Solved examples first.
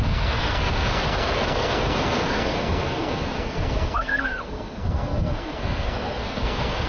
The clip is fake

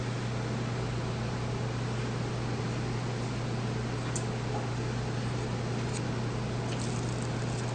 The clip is real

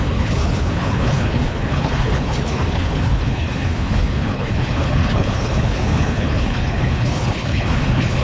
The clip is fake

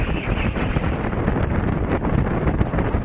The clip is real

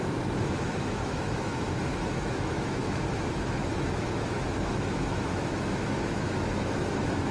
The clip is fake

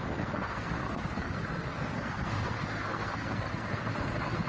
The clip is fake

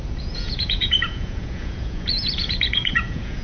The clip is fake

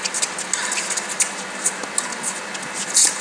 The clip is real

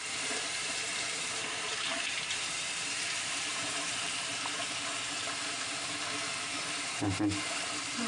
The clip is fake